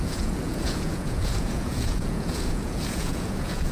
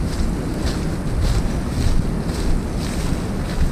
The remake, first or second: first